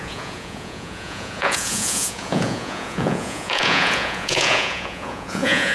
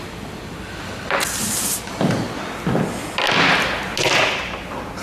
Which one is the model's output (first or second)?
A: first